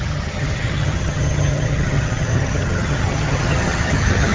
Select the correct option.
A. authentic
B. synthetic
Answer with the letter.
B